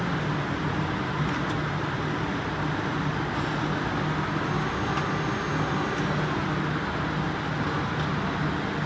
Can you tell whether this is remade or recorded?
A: recorded